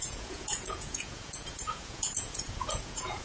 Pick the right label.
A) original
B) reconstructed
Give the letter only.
B